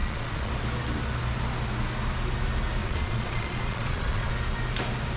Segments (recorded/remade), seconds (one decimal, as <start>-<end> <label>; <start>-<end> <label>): 0.0-0.5 remade; 0.5-2.8 recorded; 2.8-4.3 remade; 4.3-5.2 recorded